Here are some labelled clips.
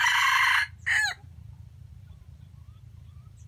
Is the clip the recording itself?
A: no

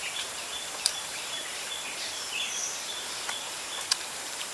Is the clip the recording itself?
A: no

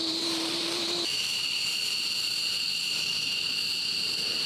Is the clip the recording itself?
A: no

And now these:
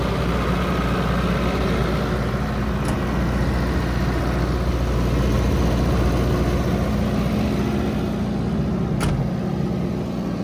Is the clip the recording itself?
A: yes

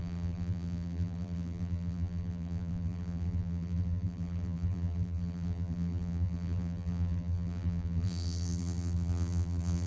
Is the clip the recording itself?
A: no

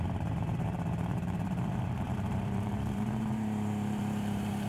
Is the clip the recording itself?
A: no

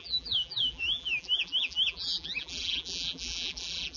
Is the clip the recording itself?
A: no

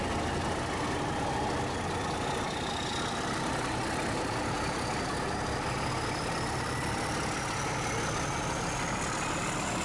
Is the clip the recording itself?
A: yes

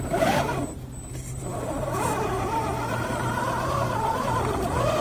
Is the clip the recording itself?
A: no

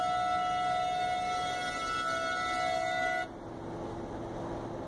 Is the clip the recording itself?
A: yes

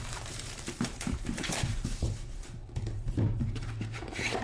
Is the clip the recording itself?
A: no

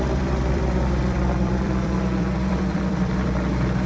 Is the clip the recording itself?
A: no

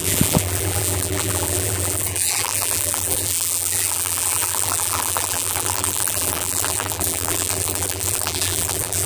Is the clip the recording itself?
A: no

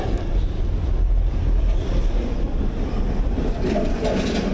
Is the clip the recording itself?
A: no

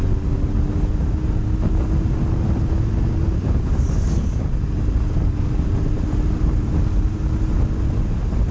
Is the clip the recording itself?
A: yes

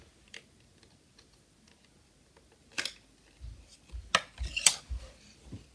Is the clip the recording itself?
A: yes